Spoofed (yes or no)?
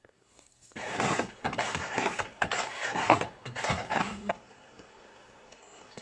yes